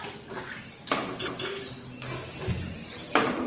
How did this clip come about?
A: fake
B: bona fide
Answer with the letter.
B